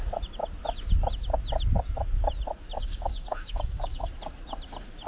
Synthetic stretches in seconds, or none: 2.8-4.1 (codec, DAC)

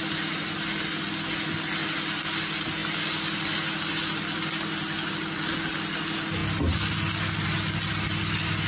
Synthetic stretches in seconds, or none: none

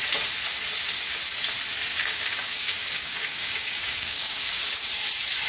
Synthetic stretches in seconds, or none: 1.9-4.6 (codec, DAC)

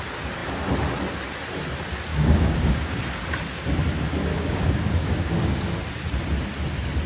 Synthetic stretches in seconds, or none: 2.1-3.0 (codec, DAC); 4.3-5.6

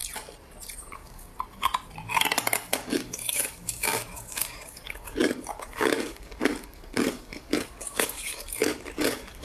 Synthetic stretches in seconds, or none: 0.8-1.3 (codec, DAC); 2.7-9.4